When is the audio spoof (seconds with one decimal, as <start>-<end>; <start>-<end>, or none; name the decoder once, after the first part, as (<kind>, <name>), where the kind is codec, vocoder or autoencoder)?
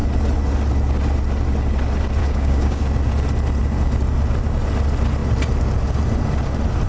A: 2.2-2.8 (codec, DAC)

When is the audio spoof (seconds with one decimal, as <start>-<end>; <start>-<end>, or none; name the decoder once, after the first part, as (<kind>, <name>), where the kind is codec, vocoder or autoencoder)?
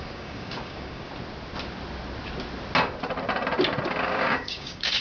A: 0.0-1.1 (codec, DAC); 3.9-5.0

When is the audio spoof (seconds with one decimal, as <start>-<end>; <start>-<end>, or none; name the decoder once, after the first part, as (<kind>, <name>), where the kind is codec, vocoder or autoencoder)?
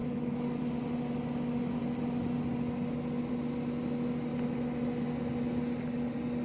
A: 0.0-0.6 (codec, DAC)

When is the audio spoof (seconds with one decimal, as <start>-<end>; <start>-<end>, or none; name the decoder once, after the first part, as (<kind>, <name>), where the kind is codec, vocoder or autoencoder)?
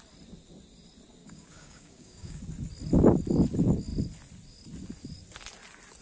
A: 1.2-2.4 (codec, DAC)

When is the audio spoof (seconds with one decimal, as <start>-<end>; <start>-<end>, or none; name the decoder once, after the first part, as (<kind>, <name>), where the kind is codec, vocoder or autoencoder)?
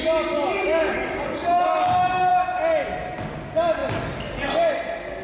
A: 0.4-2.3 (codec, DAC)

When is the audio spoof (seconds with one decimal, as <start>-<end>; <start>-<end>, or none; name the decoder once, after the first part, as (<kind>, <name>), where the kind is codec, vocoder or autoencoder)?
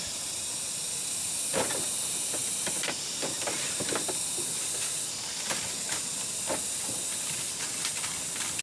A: none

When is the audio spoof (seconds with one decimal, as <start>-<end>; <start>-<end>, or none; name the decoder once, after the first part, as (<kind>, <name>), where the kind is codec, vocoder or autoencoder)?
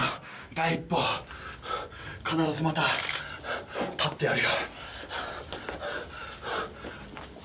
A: 0.0-0.7 (codec, DAC)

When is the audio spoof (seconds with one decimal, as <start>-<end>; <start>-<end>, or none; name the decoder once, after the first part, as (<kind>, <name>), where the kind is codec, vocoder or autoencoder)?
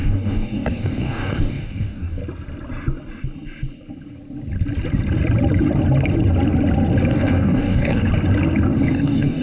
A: 0.0-2.2 (codec, DAC); 7.1-8.0; 8.9-9.4